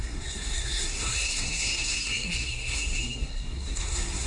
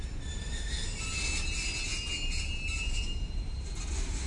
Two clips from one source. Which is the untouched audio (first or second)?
second